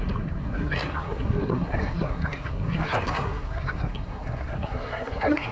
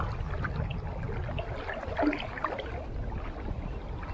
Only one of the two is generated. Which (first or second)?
first